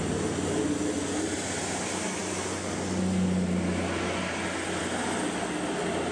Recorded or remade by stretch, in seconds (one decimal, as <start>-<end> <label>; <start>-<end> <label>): 0.0-6.1 recorded